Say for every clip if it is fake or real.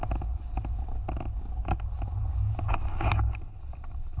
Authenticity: real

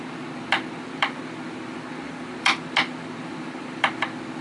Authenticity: fake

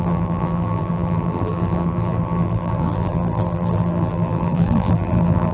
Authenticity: fake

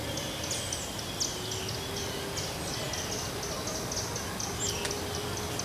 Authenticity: real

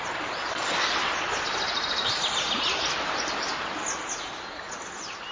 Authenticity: real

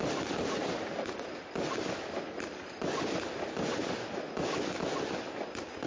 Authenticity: real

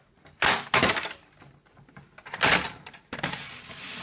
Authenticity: real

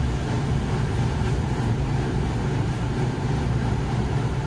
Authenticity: fake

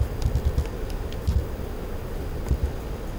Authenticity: real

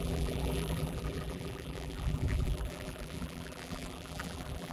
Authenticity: fake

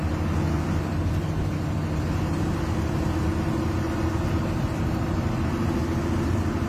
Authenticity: real